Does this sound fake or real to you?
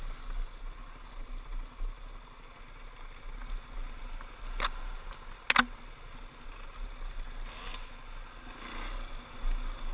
real